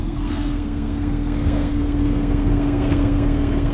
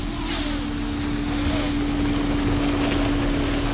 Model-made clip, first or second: first